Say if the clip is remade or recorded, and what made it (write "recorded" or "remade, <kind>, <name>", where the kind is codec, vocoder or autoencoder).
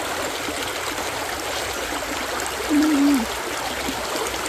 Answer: recorded